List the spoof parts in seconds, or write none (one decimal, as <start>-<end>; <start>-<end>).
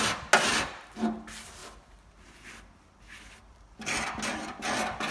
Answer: none